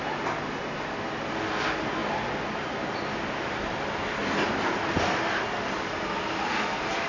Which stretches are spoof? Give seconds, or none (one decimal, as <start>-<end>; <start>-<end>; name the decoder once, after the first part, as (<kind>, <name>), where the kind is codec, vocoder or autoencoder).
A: none